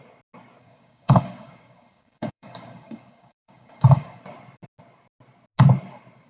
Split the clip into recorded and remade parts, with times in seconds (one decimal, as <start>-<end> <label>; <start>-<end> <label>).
0.0-0.6 recorded; 0.6-4.2 remade; 4.2-6.3 recorded